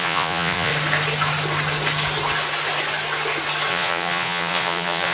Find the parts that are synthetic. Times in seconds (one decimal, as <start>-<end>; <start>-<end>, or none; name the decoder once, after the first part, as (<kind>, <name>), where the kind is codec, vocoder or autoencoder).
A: 0.0-0.7 (vocoder, Vocos); 3.7-5.1